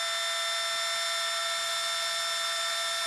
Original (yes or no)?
yes